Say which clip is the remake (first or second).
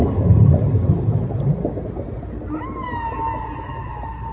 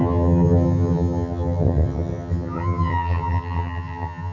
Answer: second